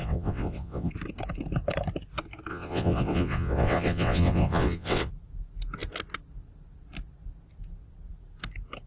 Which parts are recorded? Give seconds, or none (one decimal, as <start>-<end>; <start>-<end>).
0.9-2.5; 5.1-8.9